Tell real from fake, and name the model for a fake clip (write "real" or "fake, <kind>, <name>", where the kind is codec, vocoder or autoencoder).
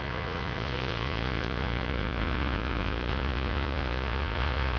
fake, vocoder, Vocos